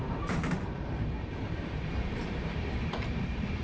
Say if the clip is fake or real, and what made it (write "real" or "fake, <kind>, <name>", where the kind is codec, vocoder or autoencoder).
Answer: fake, vocoder, BigVGAN v2